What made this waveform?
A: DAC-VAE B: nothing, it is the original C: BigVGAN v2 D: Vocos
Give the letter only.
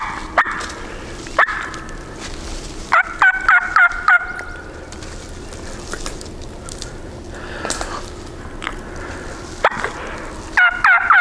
B